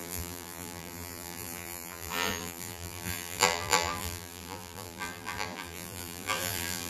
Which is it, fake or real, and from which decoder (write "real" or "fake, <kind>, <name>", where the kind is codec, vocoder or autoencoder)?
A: fake, vocoder, BigVGAN v2